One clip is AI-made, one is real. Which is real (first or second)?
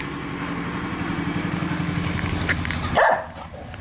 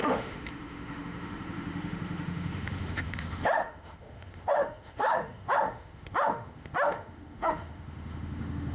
first